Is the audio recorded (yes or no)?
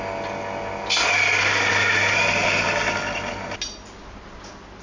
yes